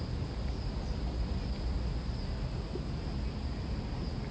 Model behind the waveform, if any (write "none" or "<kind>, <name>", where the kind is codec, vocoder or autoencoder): none